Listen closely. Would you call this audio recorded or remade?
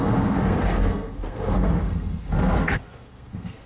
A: remade